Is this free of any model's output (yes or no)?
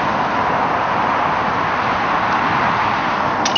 yes